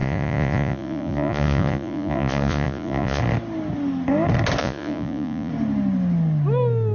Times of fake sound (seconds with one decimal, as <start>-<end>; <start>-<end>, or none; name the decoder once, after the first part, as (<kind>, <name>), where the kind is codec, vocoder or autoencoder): 0.0-3.2 (vocoder, Vocos); 4.6-5.5